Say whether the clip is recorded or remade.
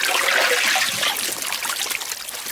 recorded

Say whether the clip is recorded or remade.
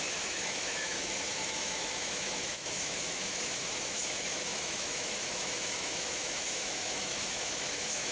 remade